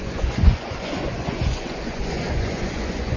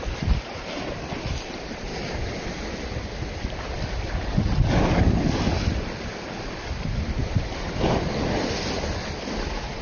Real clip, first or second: second